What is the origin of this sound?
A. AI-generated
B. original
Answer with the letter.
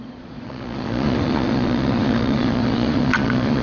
A